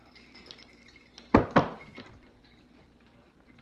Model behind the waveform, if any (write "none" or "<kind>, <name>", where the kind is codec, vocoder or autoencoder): none